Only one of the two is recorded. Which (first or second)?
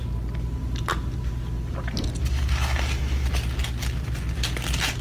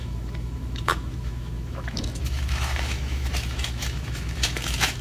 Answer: first